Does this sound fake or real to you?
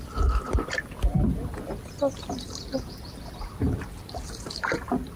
real